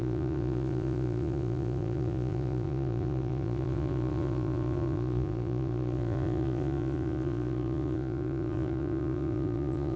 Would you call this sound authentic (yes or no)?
no